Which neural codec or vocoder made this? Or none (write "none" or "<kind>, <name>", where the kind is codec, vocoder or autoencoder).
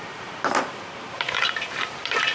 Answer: vocoder, BigVGAN v2